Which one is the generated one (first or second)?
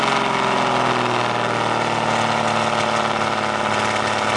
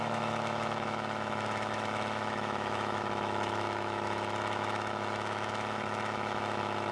second